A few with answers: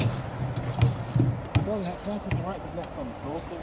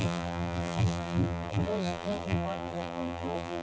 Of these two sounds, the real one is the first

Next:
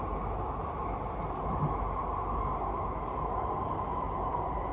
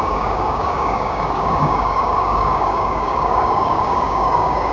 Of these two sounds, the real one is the first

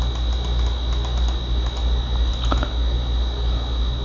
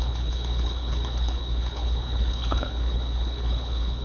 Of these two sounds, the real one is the first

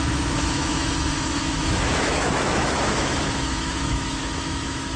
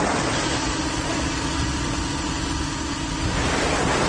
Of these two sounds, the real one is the second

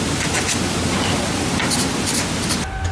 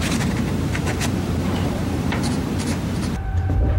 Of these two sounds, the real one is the first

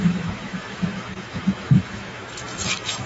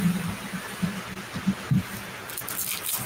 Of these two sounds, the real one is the second